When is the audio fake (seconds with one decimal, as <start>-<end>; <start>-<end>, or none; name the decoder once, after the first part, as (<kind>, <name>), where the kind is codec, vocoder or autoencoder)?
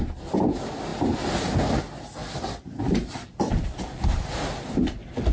none